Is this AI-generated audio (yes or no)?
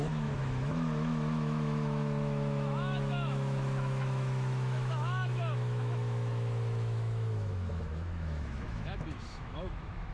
yes